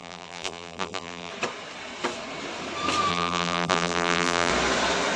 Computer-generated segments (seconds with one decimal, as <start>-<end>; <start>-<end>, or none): 0.0-1.3; 3.1-4.5